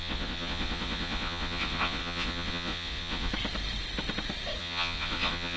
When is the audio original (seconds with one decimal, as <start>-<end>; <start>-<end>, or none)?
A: 3.3-4.6